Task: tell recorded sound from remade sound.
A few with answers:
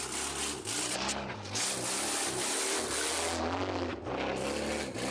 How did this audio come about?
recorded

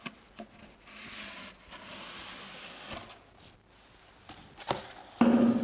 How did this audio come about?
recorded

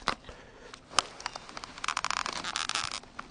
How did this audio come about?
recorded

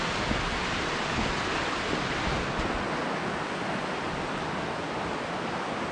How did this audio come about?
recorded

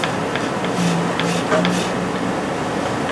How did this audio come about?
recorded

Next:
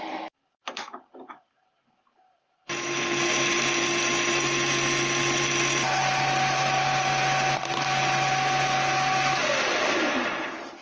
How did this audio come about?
recorded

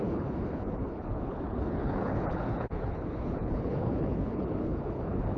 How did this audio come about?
remade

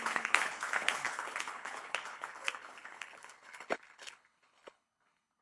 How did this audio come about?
remade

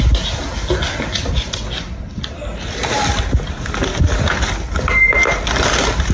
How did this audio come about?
recorded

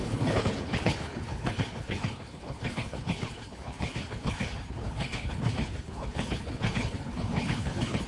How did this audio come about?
remade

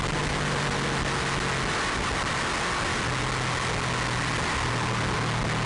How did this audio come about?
recorded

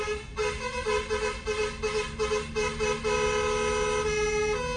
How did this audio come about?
recorded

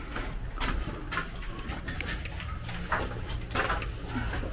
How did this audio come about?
recorded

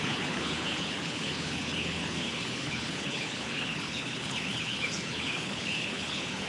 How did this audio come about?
remade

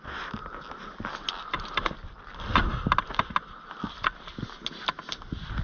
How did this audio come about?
recorded